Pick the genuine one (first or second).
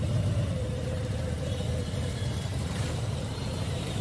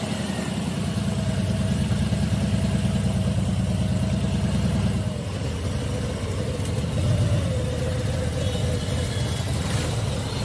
second